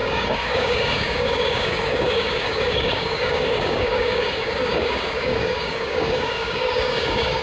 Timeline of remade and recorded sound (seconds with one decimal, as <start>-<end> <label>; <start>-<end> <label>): 0.0-7.4 remade